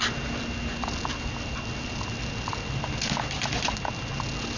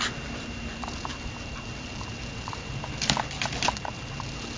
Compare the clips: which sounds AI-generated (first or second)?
second